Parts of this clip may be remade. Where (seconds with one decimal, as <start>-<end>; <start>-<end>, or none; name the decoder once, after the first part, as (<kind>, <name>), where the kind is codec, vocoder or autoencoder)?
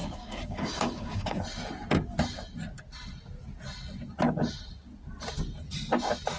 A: 0.0-1.4 (codec, DAC)